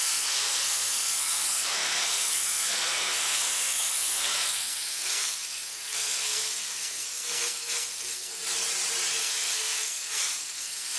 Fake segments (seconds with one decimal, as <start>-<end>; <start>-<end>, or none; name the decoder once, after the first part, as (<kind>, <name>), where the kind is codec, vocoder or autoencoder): 0.0-8.4 (codec, SNAC); 9.2-11.0